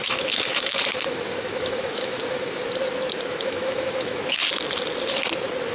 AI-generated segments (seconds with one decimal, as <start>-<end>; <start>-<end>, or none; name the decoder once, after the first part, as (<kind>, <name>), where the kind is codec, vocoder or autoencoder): 0.0-2.6 (autoencoder, DAC-VAE); 3.3-4.4